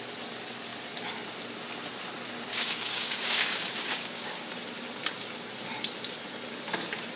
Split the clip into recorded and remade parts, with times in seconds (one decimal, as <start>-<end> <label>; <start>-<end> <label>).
0.0-2.5 recorded; 2.5-4.5 remade; 4.5-7.2 recorded